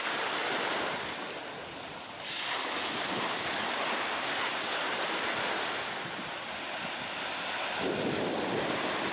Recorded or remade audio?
recorded